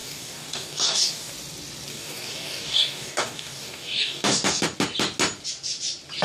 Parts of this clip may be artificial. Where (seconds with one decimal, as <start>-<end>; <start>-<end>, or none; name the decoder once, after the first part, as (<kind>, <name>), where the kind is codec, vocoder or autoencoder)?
0.0-1.3 (codec, DAC); 1.9-4.6